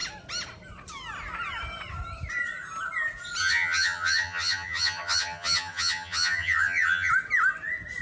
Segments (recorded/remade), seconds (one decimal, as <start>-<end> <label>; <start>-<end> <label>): 0.0-3.4 recorded; 3.4-7.1 remade; 7.1-8.0 recorded